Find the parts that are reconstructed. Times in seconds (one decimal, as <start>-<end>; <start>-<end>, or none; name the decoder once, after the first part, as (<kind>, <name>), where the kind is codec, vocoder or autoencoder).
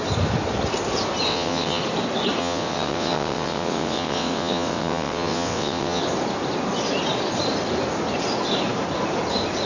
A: 1.3-1.8 (vocoder, WaveNeXt); 2.4-6.0